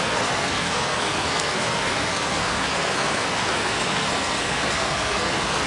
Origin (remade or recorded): remade